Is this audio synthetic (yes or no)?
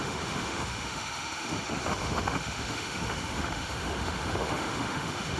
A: yes